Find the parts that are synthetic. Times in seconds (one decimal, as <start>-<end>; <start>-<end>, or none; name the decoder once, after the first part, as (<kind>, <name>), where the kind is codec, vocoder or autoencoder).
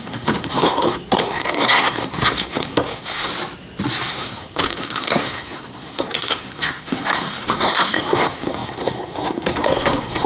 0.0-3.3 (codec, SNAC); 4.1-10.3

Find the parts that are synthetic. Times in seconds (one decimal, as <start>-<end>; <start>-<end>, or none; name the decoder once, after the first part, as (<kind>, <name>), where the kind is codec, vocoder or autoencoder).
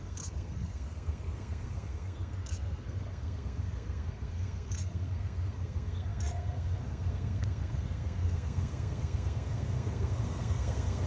0.0-11.1 (codec, SNAC)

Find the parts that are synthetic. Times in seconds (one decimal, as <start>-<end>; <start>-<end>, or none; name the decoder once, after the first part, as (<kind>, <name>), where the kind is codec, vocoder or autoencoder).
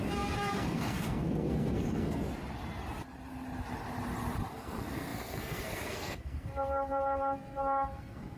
0.0-2.2 (codec, SNAC); 4.5-8.4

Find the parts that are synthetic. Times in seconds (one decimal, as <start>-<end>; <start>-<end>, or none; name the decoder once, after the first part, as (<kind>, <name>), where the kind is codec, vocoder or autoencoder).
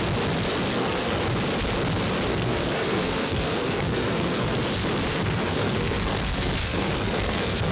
0.7-1.2 (codec, SNAC); 2.3-4.5; 5.1-7.7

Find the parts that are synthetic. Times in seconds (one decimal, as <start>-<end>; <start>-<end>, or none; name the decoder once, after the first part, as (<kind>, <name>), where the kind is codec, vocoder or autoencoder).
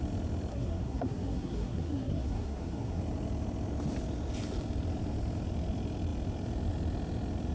0.5-3.0 (codec, SNAC)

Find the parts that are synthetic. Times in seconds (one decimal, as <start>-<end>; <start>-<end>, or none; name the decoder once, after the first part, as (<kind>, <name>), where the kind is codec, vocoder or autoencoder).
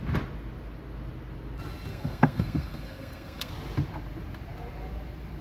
1.9-3.5 (codec, SNAC)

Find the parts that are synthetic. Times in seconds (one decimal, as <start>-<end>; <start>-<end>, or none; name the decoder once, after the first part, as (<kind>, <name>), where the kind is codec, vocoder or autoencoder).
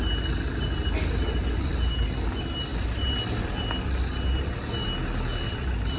none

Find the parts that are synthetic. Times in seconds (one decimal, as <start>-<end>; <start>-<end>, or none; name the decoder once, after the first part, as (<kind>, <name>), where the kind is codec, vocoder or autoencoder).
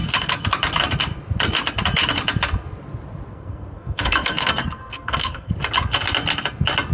3.3-5.5 (codec, SNAC)